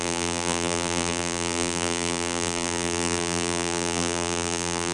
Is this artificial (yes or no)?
yes